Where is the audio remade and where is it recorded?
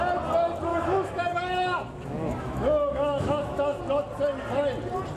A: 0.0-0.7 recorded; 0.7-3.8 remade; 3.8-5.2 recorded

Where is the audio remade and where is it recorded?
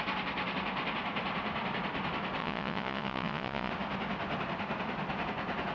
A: 0.0-2.4 recorded; 2.4-3.7 remade; 3.7-5.7 recorded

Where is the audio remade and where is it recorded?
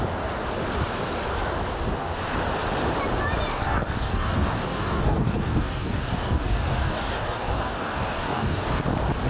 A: 0.0-3.5 recorded; 3.5-8.8 remade; 8.8-9.3 recorded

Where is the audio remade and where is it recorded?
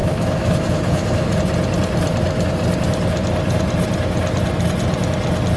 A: 0.0-1.4 remade; 1.4-5.6 recorded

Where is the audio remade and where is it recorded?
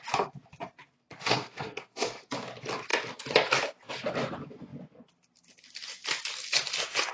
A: 0.0-1.3 recorded; 1.3-2.2 remade; 2.2-7.1 recorded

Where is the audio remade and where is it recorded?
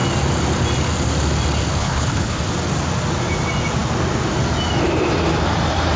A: 0.0-1.8 recorded; 1.8-2.4 remade; 2.4-6.0 recorded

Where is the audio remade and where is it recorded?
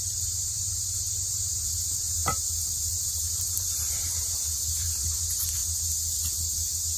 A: 0.0-2.2 remade; 2.2-3.1 recorded; 3.1-5.6 remade; 5.6-7.0 recorded